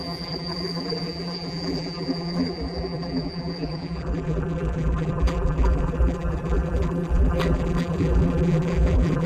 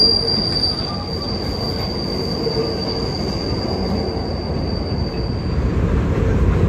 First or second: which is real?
second